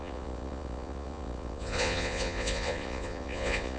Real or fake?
fake